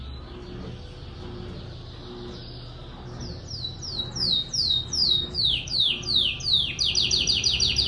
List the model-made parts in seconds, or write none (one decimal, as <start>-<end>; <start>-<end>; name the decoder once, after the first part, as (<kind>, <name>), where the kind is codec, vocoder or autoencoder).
5.0-5.9 (autoencoder, DAC-VAE)